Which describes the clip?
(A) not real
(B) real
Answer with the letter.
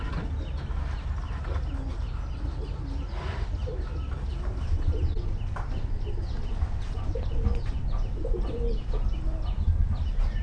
B